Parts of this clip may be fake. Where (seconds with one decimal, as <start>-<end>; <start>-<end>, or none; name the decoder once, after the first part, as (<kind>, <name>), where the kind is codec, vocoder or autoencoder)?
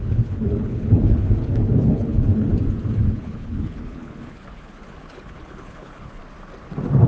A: 0.0-2.5 (codec, HILCodec); 3.1-6.2